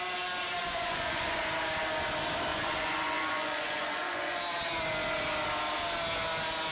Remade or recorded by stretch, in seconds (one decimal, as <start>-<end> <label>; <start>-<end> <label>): 0.0-0.6 recorded; 0.6-1.4 remade; 1.4-2.5 recorded; 2.5-4.4 remade; 4.4-6.7 recorded